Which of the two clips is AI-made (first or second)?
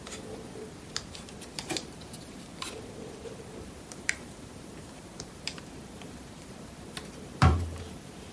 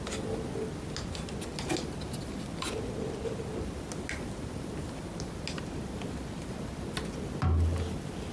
first